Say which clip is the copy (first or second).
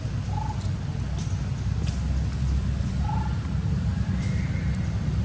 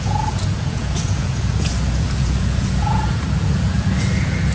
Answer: second